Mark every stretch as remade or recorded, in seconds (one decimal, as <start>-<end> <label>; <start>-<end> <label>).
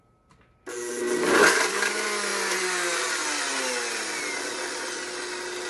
0.0-1.4 recorded; 1.4-1.9 remade; 1.9-5.7 recorded